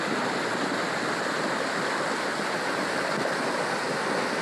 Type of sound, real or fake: real